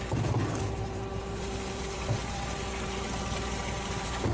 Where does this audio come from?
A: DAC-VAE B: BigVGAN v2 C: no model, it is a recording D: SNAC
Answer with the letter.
B